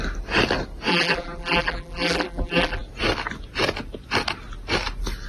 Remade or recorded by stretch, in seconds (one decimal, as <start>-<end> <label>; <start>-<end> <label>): 0.0-0.9 recorded; 0.9-2.8 remade; 2.8-5.3 recorded